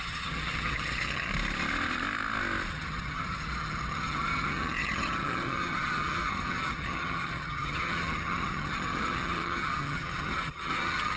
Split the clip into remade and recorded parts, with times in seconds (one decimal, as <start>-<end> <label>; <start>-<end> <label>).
0.0-1.3 remade; 1.3-2.7 recorded; 2.7-11.2 remade